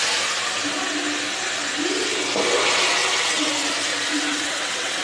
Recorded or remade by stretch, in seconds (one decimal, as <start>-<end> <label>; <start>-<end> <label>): 0.0-3.0 recorded; 3.0-3.5 remade; 3.5-3.9 recorded; 3.9-5.0 remade

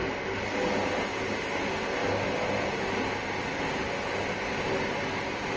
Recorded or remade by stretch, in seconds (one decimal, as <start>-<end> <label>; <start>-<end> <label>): 0.0-5.6 recorded

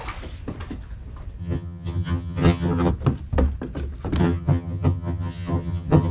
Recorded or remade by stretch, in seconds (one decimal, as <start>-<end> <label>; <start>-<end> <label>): 0.0-1.4 recorded; 1.4-2.9 remade; 2.9-4.2 recorded; 4.2-6.1 remade